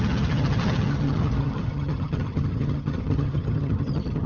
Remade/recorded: remade